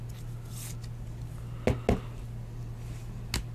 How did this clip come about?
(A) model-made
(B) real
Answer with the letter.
B